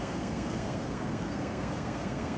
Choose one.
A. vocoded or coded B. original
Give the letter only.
A